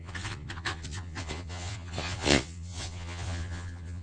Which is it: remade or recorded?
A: remade